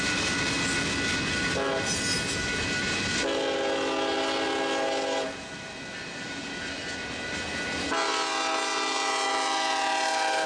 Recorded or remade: recorded